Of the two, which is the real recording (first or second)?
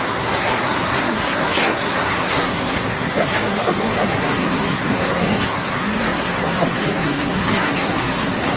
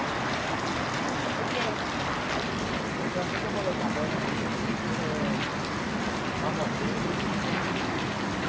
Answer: second